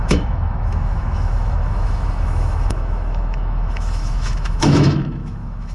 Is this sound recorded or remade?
remade